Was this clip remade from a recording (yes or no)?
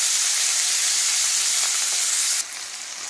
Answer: no